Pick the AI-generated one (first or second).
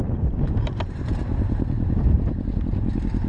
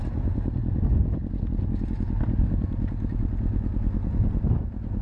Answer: first